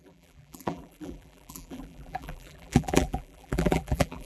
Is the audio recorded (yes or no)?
no